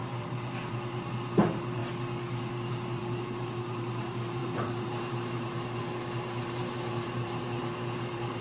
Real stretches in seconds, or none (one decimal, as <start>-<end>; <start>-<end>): 1.8-2.7